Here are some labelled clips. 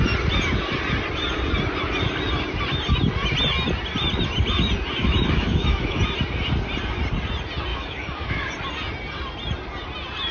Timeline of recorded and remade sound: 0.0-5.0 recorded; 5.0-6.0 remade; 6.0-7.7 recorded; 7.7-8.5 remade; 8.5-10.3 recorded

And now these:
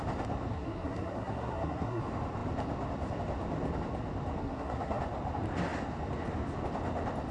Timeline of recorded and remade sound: 0.0-0.5 recorded; 0.5-2.0 remade; 2.0-4.4 recorded; 4.4-5.0 remade; 5.0-7.3 recorded

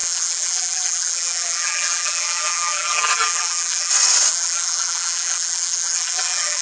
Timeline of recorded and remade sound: 0.0-3.9 remade; 3.9-4.3 recorded; 4.3-6.6 remade